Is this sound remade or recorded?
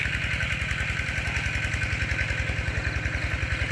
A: recorded